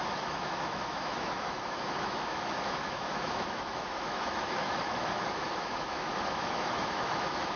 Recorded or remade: remade